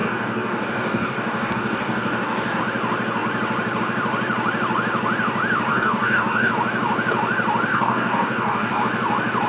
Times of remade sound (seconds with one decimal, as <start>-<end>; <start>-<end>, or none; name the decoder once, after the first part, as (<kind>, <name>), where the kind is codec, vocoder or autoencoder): 0.0-2.6 (codec, DAC); 5.7-6.5; 7.7-8.8